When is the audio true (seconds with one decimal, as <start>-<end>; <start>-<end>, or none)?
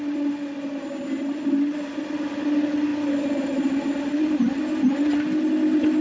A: 0.0-2.9; 4.6-6.0